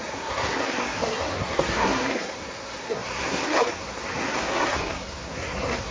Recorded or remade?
remade